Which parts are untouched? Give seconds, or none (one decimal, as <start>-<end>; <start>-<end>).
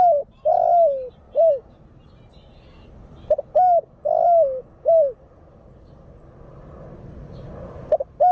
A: 0.0-8.3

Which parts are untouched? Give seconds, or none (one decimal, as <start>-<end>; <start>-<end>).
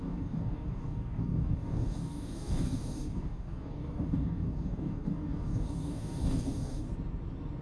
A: 6.9-7.6